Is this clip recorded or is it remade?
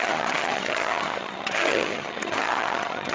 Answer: remade